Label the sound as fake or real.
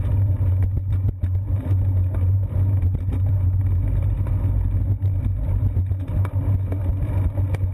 real